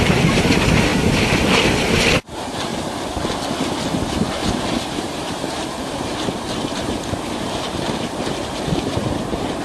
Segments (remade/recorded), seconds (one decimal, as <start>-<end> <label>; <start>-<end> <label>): 0.0-0.9 remade; 0.9-2.2 recorded; 2.2-2.7 remade; 2.7-4.2 recorded; 4.2-9.6 remade